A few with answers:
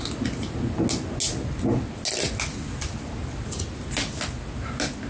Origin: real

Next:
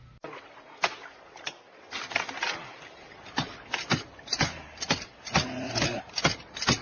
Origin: real